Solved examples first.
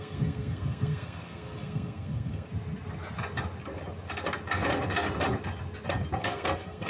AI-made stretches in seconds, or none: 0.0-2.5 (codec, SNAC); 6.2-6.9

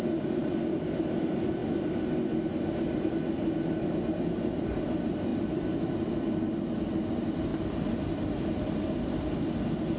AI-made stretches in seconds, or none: none

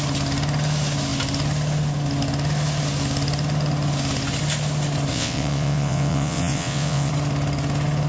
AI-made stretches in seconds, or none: 5.1-7.1 (vocoder, WaveNeXt)

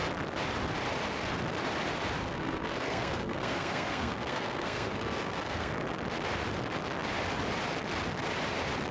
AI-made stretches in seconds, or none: 2.2-5.7 (codec, SNAC)

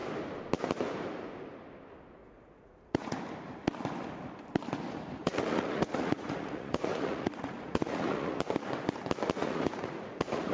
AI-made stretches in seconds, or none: 2.2-3.2 (vocoder, Vocos); 5.2-8.4; 9.4-10.5

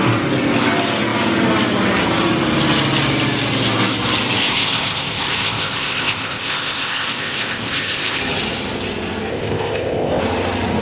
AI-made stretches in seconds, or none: 4.4-8.2 (codec, ZipCodec); 9.3-10.2

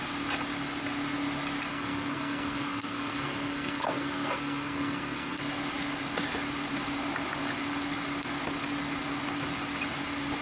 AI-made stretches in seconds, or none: 1.7-5.4 (codec, SNAC)